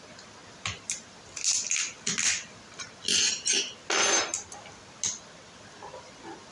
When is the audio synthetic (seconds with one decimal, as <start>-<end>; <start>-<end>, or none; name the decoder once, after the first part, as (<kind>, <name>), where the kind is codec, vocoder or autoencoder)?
none